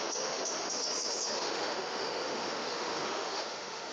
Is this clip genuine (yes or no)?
no